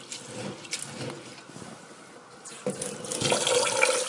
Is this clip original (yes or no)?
yes